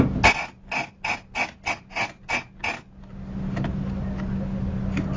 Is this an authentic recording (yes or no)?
yes